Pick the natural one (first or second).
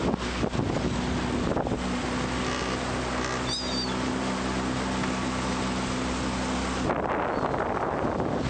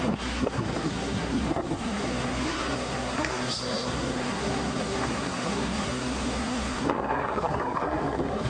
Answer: first